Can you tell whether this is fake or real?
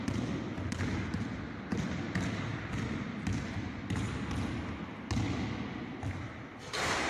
real